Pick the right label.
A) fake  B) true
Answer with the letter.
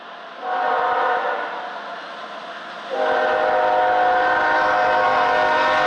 B